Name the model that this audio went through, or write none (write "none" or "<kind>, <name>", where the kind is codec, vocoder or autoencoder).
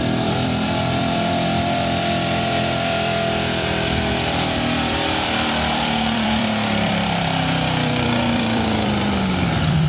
vocoder, BigVGAN v2